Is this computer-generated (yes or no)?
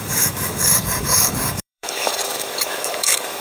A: yes